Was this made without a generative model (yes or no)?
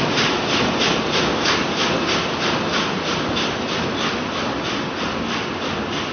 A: yes